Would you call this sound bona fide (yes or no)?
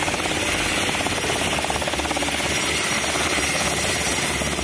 yes